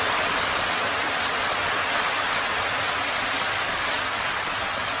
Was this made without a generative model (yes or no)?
yes